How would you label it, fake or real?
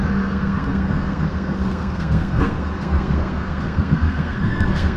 fake